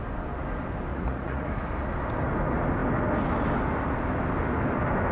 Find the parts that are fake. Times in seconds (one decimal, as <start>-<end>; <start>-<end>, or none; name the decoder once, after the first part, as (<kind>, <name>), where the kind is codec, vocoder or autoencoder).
0.9-1.5 (vocoder, Vocos)